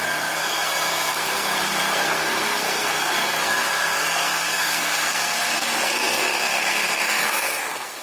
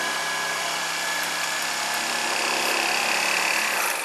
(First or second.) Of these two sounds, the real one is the second